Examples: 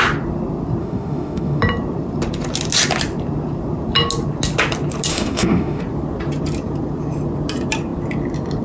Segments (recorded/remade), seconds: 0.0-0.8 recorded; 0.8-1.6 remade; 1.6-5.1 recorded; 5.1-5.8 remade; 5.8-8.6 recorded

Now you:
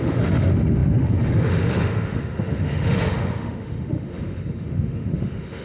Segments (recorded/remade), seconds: 0.0-5.6 remade

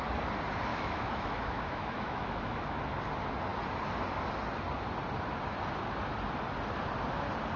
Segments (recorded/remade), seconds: 0.0-0.7 recorded; 0.7-2.8 remade; 2.8-7.6 recorded

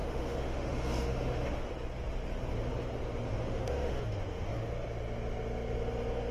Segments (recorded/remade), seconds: 0.0-1.7 remade; 1.7-3.3 recorded; 3.3-4.7 remade; 4.7-6.3 recorded

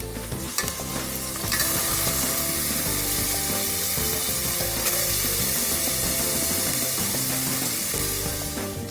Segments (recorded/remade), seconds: 0.0-8.9 recorded

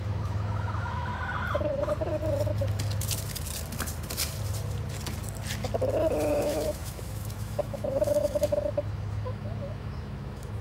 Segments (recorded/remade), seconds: 0.0-1.1 remade; 1.1-6.3 recorded; 6.3-10.6 remade